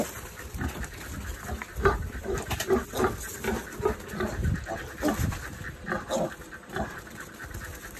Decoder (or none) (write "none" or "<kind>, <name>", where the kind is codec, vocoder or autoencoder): none